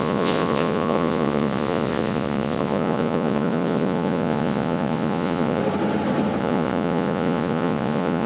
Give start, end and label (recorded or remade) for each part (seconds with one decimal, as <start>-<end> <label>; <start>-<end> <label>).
0.0-5.6 remade; 5.6-6.4 recorded; 6.4-8.3 remade

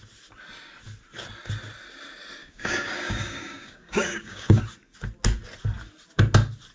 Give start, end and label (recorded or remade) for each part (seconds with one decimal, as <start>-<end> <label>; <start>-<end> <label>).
0.0-2.4 recorded; 2.4-4.6 remade; 4.6-6.7 recorded

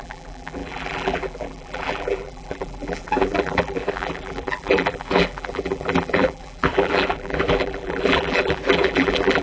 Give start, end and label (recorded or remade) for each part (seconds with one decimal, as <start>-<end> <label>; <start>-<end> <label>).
0.0-9.4 remade